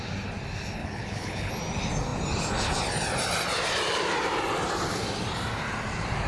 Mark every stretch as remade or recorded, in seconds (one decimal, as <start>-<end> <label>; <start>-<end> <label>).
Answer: 0.0-0.8 recorded; 0.8-1.5 remade; 1.5-6.3 recorded